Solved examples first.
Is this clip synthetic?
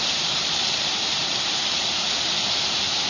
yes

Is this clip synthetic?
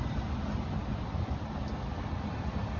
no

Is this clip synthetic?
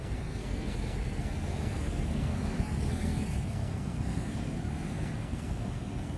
yes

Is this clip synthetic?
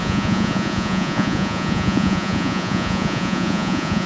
yes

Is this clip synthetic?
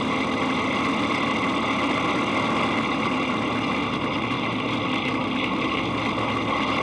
no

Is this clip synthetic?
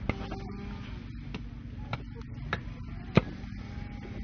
no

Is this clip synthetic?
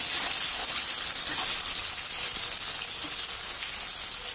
no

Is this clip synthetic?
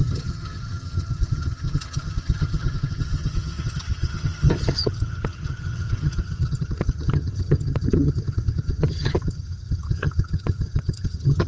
yes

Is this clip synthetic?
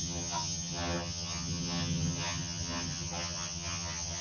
yes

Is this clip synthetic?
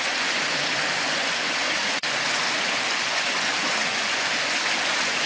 yes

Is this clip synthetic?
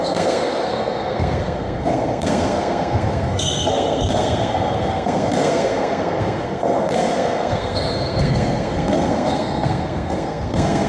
yes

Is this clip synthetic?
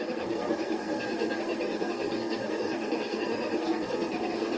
yes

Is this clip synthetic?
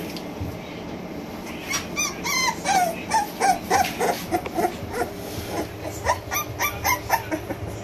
no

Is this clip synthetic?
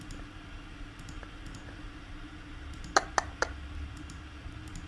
no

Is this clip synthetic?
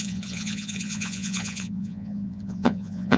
yes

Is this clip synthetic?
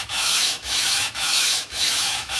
yes